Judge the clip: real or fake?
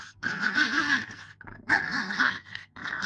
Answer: fake